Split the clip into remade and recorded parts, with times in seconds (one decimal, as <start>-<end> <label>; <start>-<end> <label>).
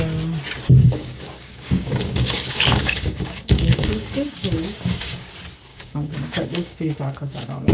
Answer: 0.0-0.8 recorded; 0.8-5.3 remade; 5.3-5.7 recorded; 5.7-7.7 remade